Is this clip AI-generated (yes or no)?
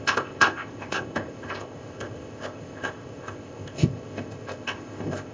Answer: yes